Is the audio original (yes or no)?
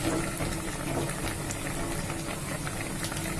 yes